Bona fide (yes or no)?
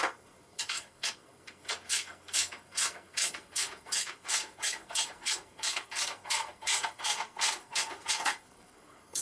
no